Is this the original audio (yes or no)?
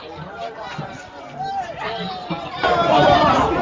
no